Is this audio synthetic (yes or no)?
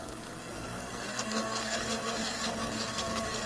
yes